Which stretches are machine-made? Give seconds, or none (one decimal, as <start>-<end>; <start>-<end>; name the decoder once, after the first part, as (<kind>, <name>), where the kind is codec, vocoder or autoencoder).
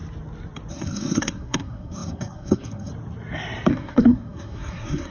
0.7-2.9 (codec, SNAC); 3.7-5.1